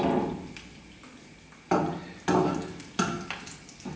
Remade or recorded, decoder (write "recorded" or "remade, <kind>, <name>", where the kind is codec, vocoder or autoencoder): recorded